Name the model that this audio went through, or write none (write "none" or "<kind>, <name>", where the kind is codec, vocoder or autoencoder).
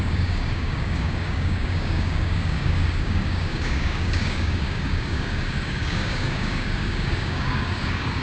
codec, DAC